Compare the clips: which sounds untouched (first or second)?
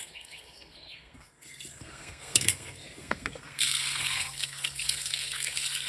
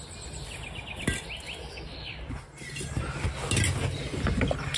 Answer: second